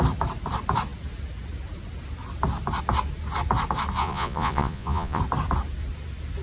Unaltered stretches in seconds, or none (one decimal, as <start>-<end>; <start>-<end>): 0.0-4.0; 5.2-6.4